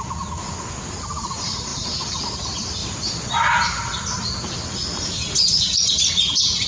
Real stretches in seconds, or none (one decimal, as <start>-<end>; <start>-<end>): 0.0-6.7

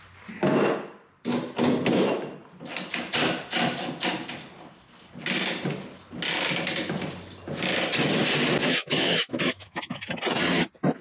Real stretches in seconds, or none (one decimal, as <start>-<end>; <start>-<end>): 0.0-8.6; 10.0-11.0